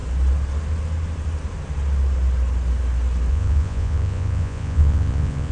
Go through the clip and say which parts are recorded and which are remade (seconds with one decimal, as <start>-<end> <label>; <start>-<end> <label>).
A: 0.0-3.3 recorded; 3.3-5.5 remade